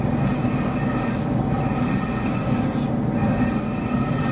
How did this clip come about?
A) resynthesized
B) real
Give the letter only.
B